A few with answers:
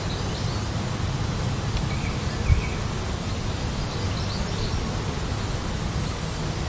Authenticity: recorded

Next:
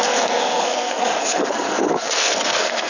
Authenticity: remade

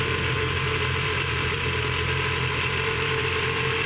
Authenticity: remade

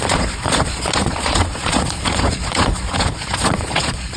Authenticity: remade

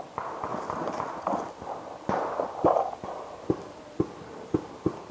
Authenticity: remade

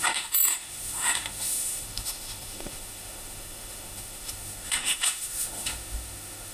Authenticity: remade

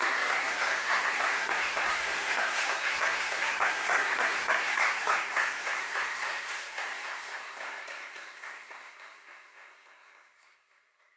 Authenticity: remade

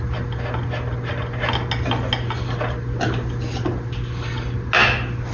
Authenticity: recorded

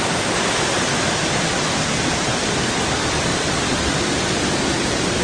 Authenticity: recorded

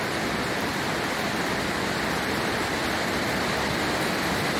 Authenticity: remade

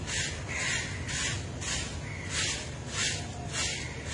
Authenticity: recorded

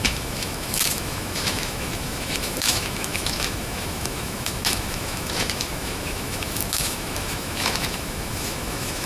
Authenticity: remade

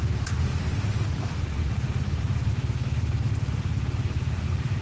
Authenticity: recorded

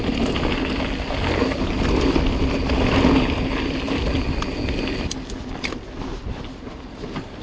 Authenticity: recorded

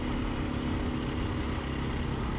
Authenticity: recorded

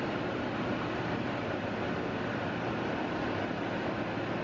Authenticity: recorded